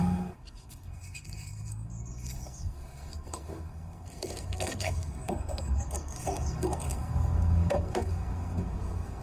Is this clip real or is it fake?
fake